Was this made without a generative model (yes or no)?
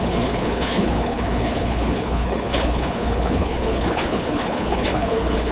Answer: no